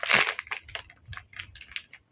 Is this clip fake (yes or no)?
no